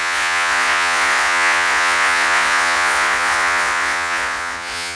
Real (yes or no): no